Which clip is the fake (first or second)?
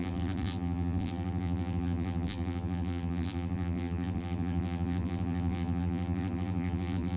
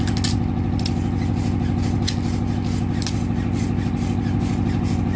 first